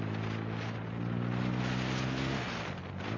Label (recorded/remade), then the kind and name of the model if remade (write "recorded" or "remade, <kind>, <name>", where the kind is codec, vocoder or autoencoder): recorded